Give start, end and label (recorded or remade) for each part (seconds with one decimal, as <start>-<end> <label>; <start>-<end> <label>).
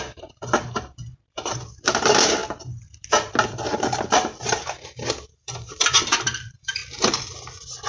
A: 0.0-2.4 remade; 2.4-3.5 recorded; 3.5-6.8 remade; 6.8-7.9 recorded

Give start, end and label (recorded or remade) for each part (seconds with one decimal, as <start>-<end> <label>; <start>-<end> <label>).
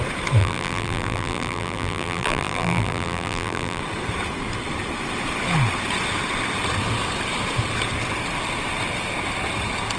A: 0.0-0.4 recorded; 0.4-3.8 remade; 3.8-10.0 recorded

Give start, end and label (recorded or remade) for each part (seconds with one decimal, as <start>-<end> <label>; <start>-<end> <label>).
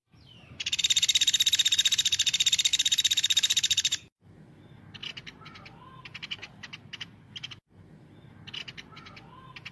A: 0.0-0.8 remade; 0.8-2.7 recorded; 2.7-4.3 remade; 4.3-9.7 recorded